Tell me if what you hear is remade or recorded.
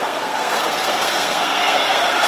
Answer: remade